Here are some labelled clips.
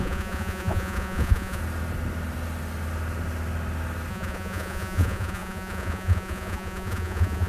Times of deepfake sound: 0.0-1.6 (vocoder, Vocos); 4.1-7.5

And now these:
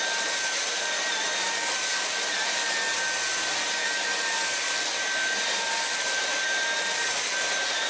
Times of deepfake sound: none

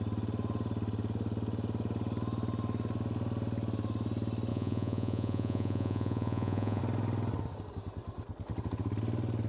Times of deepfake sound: 4.5-6.8 (vocoder, Vocos)

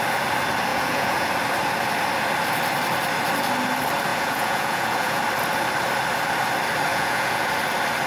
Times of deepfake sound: 0.7-1.3 (vocoder, Vocos); 4.1-5.2; 6.9-7.5

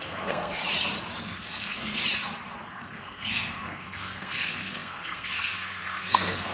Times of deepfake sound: 0.0-0.6 (codec, SNAC); 1.2-2.0; 2.7-6.5

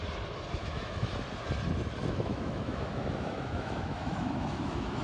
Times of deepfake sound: 0.6-1.1 (autoencoder, DAC-VAE); 2.0-5.0

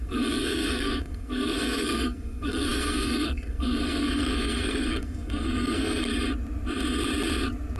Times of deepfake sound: 0.0-6.1 (codec, SNAC)